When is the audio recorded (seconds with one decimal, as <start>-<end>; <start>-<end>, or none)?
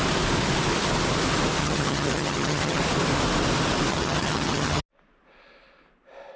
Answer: 0.0-1.6; 2.8-3.9; 4.8-6.4